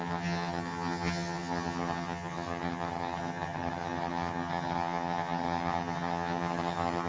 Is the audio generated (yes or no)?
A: yes